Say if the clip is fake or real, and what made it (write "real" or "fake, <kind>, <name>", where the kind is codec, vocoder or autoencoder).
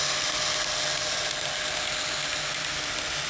real